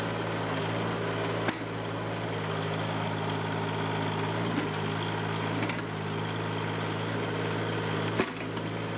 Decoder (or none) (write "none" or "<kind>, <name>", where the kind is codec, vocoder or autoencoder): none